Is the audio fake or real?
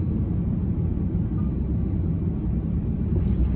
real